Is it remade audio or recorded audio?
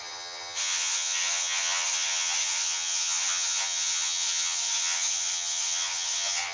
remade